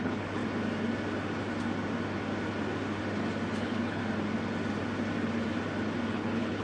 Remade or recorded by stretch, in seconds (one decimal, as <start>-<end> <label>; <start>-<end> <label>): 0.0-0.4 remade; 0.4-3.6 recorded; 3.6-4.0 remade; 4.0-6.1 recorded; 6.1-6.6 remade